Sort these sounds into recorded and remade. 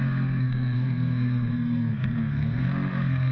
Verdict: remade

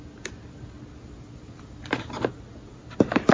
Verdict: recorded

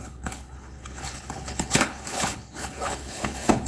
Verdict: remade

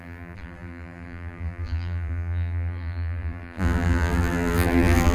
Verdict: remade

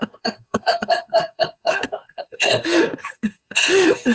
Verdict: remade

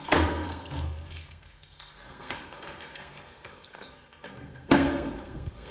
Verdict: remade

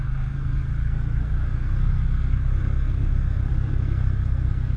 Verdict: remade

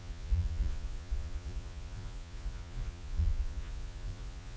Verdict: remade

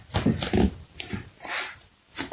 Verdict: recorded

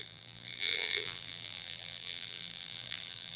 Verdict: remade